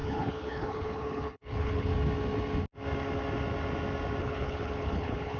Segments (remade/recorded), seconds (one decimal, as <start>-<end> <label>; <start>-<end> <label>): 0.0-1.9 remade; 1.9-4.2 recorded; 4.2-5.4 remade